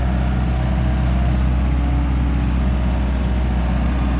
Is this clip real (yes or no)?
yes